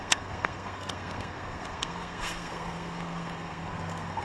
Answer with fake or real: fake